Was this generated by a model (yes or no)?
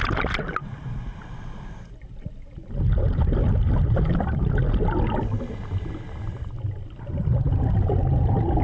no